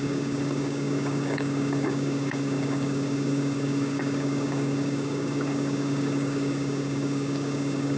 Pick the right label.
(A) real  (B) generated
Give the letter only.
B